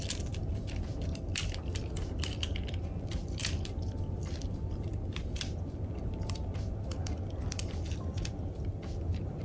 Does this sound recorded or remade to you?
remade